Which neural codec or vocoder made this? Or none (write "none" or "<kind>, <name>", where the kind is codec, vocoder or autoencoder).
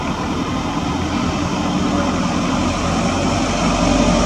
none